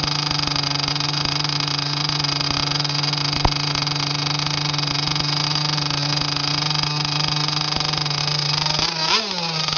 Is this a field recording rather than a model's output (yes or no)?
yes